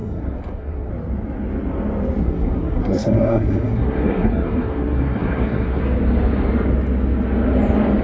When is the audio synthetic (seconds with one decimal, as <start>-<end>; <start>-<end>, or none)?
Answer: 0.0-0.9; 2.2-5.8

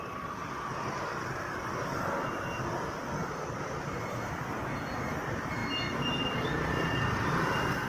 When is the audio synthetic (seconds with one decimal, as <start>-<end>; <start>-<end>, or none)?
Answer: 0.4-1.6

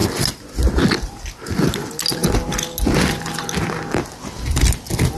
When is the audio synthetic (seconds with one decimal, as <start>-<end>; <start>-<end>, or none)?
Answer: none

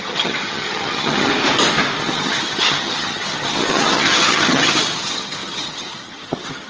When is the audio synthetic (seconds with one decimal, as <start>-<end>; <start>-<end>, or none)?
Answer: 0.0-1.3; 2.0-6.7